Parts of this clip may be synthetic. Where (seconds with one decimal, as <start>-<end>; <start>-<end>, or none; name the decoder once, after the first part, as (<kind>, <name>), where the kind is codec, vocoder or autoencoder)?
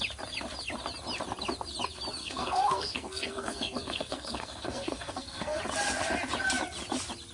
2.2-5.6 (codec, SNAC)